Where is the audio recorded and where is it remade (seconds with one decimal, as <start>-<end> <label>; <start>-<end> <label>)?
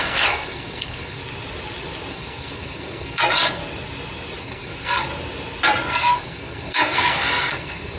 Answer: 0.0-1.2 remade; 1.2-2.1 recorded; 2.1-3.6 remade; 3.6-4.4 recorded; 4.4-5.1 remade; 5.1-5.9 recorded; 5.9-8.0 remade